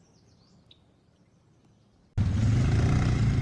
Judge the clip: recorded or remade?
recorded